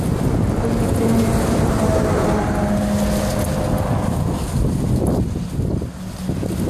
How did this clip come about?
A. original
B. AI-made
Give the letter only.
A